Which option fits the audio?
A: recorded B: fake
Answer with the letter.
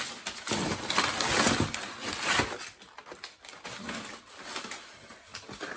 A